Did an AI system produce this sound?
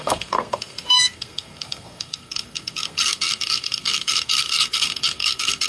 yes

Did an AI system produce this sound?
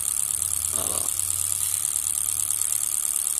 no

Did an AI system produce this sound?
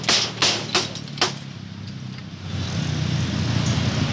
no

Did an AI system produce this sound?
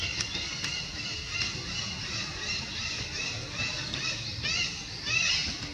no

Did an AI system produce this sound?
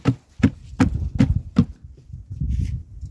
no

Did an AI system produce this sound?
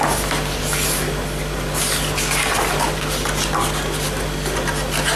no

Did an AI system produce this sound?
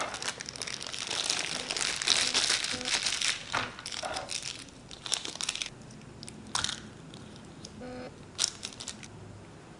no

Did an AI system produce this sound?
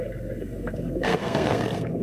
yes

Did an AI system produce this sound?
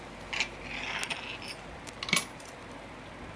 no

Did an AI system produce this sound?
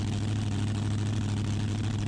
no